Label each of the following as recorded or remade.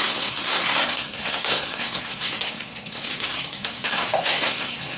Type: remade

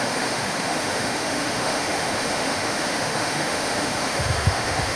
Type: remade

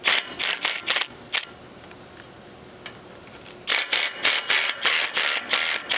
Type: recorded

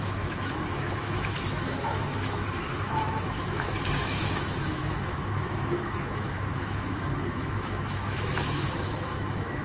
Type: remade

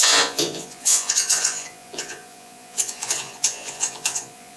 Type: remade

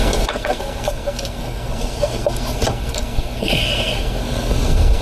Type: remade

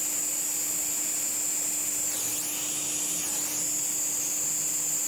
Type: recorded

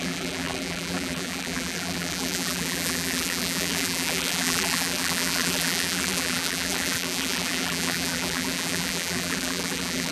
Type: remade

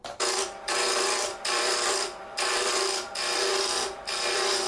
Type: remade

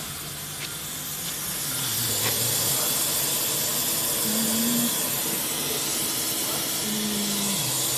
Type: recorded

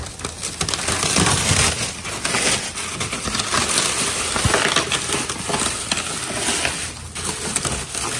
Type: recorded